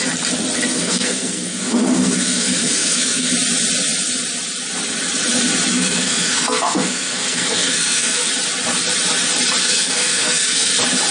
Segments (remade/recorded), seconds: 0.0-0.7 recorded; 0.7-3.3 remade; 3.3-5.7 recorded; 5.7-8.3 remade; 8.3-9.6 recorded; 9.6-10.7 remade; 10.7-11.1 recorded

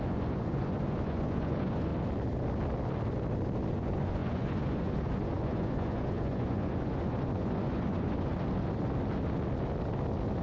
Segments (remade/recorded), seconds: 0.0-1.9 remade; 1.9-3.7 recorded; 3.7-8.3 remade; 8.3-10.4 recorded